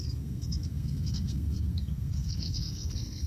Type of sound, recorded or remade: remade